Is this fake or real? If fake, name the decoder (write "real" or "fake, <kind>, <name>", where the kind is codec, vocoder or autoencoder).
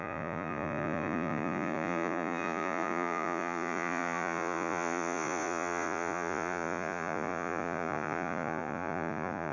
fake, vocoder, Vocos